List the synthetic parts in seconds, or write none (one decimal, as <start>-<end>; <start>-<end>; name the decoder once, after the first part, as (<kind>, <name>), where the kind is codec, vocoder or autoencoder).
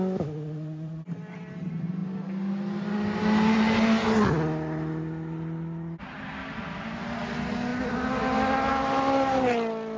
none